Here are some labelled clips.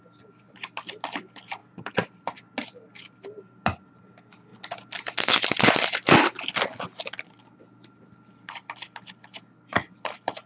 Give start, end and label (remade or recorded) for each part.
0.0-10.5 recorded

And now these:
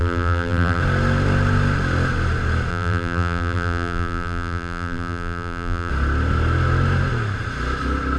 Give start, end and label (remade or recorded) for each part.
0.0-0.8 remade; 0.8-2.7 recorded; 2.7-5.9 remade; 5.9-8.2 recorded

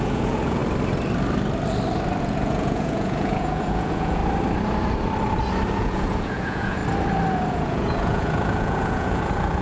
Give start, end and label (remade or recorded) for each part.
0.0-0.6 remade; 0.6-2.2 recorded; 2.2-4.2 remade; 4.2-5.8 recorded; 5.8-6.8 remade; 6.8-7.5 recorded; 7.5-9.6 remade

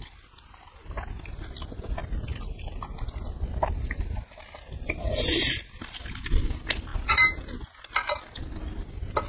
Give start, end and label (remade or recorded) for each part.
0.0-9.3 recorded

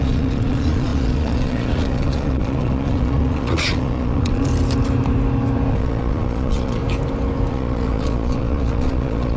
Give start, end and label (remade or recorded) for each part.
0.0-4.5 remade; 4.5-5.7 recorded; 5.7-6.8 remade; 6.8-7.5 recorded; 7.5-9.4 remade

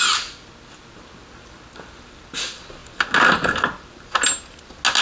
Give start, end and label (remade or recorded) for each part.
0.0-5.0 recorded